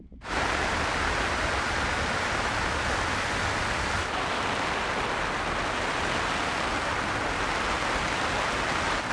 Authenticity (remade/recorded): recorded